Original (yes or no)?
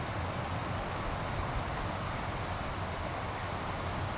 yes